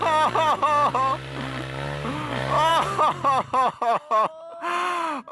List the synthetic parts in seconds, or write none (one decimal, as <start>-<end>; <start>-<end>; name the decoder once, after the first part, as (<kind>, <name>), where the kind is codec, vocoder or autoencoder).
none